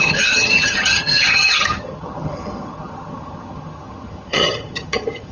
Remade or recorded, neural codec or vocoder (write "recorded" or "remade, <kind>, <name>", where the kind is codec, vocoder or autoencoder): remade, vocoder, HiFi-GAN